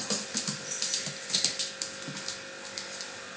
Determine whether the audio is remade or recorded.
recorded